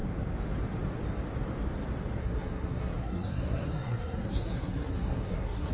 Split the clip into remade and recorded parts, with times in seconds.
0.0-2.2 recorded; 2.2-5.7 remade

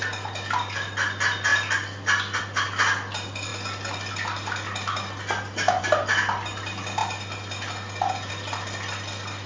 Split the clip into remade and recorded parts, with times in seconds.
0.0-9.5 recorded